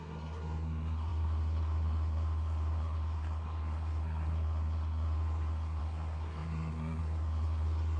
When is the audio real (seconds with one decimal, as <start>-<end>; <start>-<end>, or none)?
none

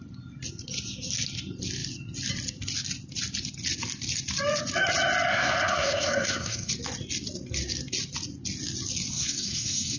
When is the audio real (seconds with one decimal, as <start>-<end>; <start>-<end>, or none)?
0.0-5.3; 6.7-9.1

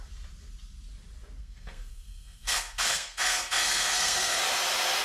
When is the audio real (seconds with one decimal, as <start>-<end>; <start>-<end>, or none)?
0.0-1.4; 4.4-5.0

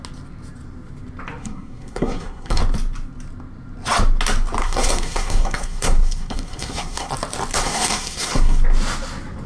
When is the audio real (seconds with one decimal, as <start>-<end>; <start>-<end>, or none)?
0.0-1.4; 2.6-4.6; 7.1-7.6; 8.6-9.5

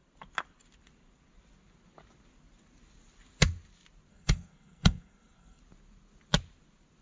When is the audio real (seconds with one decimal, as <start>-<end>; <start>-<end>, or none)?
0.0-4.1; 5.6-7.0

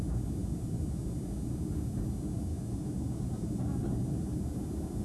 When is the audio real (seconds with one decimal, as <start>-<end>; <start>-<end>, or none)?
0.0-5.0

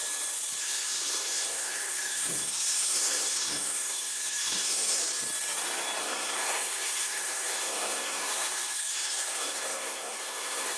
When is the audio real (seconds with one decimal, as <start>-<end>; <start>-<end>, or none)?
0.0-0.6; 5.0-6.0

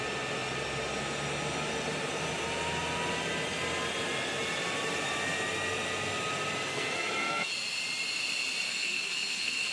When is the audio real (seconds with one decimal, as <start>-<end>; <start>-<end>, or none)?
0.0-6.7; 7.5-8.7